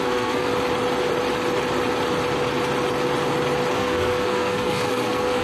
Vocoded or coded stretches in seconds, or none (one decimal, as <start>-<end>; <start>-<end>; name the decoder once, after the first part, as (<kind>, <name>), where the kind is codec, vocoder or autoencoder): 0.0-0.5 (codec, SNAC); 3.7-5.4